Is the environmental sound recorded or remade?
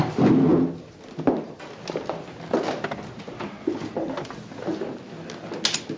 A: recorded